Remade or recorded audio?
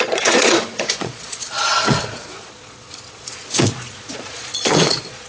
remade